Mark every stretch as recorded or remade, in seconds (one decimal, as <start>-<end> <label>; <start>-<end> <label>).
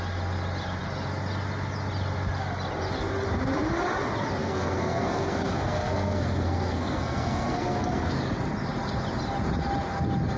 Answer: 0.0-4.4 recorded; 4.4-8.2 remade; 8.2-10.4 recorded